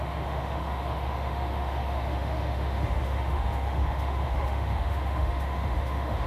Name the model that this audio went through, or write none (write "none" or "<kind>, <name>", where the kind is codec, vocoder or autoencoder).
autoencoder, DAC-VAE